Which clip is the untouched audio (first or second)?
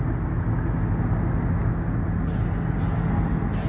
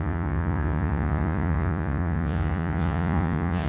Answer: first